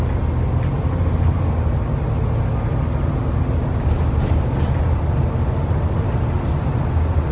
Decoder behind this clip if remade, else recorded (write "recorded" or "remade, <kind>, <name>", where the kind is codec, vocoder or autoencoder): recorded